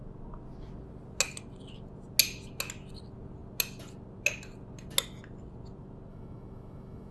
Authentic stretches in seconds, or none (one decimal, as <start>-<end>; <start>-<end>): 0.0-6.1